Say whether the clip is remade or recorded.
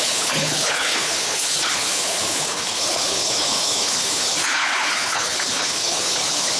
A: remade